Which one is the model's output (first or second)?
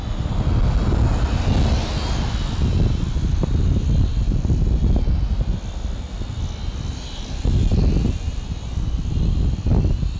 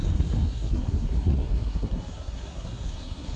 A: second